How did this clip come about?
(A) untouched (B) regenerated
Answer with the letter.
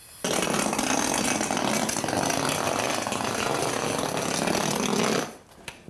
A